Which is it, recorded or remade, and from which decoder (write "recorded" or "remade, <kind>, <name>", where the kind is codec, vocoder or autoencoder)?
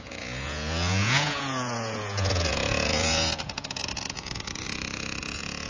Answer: remade, vocoder, Vocos